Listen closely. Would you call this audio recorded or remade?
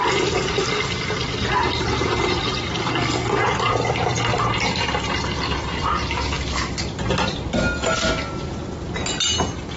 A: recorded